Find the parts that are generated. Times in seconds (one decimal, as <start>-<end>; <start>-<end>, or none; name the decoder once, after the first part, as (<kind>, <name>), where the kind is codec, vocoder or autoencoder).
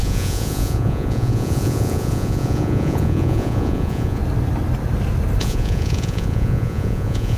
0.0-4.2 (vocoder, Vocos); 5.4-7.4